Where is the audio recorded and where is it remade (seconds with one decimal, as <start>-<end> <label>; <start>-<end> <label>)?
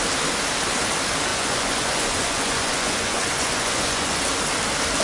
0.0-1.3 recorded; 1.3-4.2 remade; 4.2-5.0 recorded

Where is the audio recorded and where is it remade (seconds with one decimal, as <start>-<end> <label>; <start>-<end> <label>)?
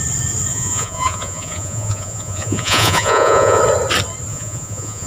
0.0-0.5 recorded; 0.5-3.6 remade; 3.6-4.3 recorded; 4.3-5.1 remade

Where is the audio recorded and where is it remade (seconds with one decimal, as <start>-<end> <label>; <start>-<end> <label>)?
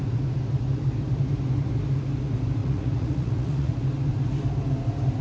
0.0-2.6 recorded; 2.6-3.7 remade; 3.7-5.2 recorded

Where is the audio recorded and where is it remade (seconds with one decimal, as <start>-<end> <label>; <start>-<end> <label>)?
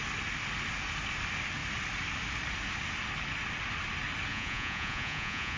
0.0-4.3 recorded; 4.3-5.6 remade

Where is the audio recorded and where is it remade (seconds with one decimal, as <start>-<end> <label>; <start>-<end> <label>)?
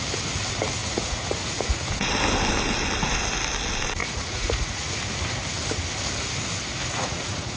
0.0-0.8 recorded; 0.8-2.1 remade; 2.1-4.0 recorded; 4.0-4.9 remade; 4.9-6.8 recorded; 6.8-7.6 remade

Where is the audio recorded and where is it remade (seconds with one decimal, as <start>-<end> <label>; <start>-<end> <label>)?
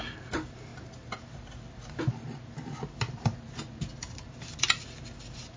0.0-5.6 recorded